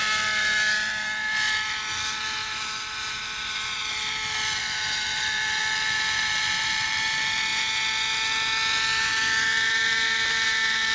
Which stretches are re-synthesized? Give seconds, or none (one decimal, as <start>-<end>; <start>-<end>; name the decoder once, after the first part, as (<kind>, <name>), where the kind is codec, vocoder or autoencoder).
0.0-7.5 (vocoder, BigVGAN v2); 9.0-10.9